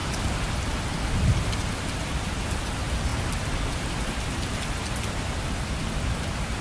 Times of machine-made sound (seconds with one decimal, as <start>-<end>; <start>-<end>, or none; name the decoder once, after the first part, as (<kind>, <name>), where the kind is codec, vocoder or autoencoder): none